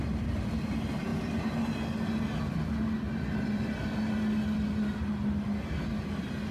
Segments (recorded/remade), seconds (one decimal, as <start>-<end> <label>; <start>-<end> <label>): 0.0-6.5 recorded